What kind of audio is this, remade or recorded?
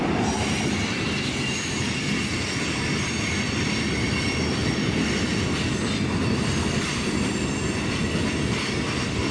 recorded